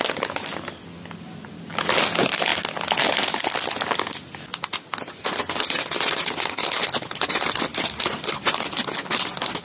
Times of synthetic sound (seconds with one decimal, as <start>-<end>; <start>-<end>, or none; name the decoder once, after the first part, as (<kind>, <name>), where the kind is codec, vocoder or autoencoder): none